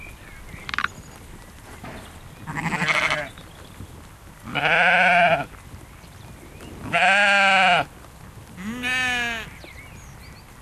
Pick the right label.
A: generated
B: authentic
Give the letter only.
B